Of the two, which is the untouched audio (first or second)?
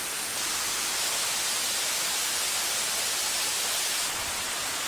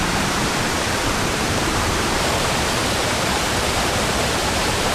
first